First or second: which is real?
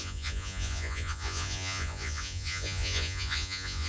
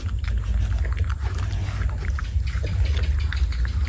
second